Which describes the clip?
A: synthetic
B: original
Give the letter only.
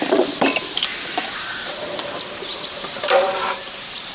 A